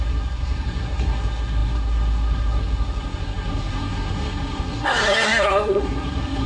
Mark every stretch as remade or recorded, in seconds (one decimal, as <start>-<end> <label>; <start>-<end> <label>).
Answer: 0.0-6.5 remade